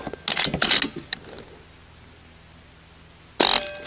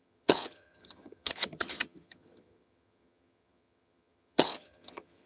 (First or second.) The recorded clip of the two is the first